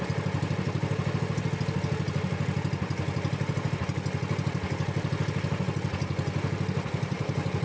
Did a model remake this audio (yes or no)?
no